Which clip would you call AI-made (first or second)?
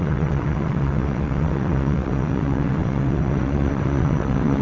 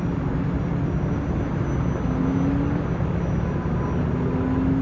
first